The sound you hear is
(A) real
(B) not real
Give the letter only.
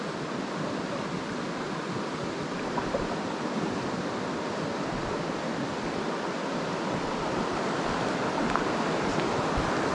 A